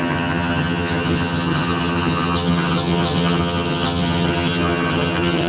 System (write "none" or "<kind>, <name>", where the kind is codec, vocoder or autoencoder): vocoder, HiFi-GAN